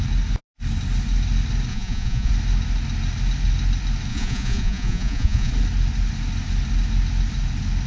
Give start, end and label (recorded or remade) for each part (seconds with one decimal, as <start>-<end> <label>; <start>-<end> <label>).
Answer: 0.0-1.7 recorded; 1.7-2.3 remade; 2.3-4.1 recorded; 4.1-5.5 remade; 5.5-7.9 recorded